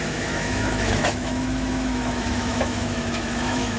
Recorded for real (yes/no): no